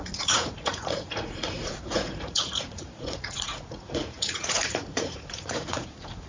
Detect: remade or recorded remade